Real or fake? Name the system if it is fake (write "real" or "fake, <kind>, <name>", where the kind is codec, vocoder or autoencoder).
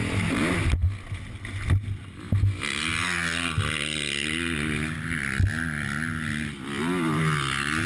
real